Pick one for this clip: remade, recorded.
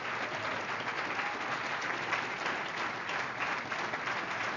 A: recorded